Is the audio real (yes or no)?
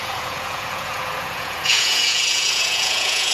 no